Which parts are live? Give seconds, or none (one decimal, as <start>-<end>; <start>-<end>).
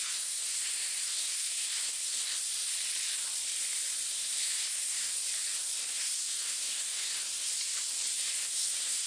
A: 2.4-4.1; 5.1-5.9; 7.5-8.4